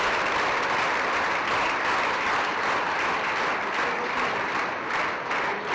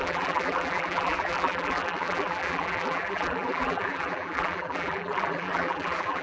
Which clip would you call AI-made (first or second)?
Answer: second